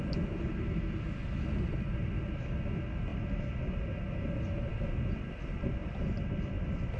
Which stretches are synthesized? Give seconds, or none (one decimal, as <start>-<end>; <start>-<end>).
none